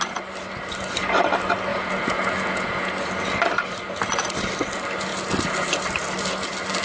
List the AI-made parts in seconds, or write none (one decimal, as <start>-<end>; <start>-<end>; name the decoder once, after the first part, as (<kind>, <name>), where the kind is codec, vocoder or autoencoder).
1.7-2.9 (vocoder, Vocos)